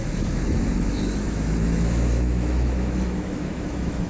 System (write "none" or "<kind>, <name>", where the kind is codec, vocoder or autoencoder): autoencoder, DAC-VAE